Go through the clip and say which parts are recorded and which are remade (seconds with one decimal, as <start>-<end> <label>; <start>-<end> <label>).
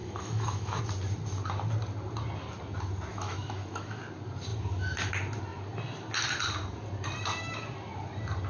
0.0-0.8 remade; 0.8-3.1 recorded; 3.1-4.0 remade; 4.0-8.5 recorded